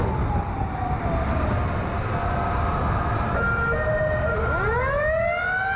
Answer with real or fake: real